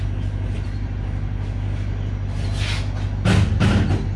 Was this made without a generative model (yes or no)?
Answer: yes